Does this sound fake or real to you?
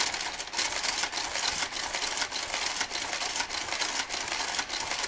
real